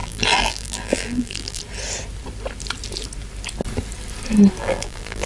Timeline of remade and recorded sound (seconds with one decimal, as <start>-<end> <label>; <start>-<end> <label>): 0.0-1.6 remade; 1.6-4.6 recorded; 4.6-5.3 remade